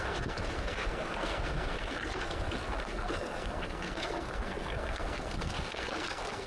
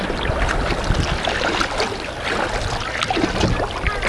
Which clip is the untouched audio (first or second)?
second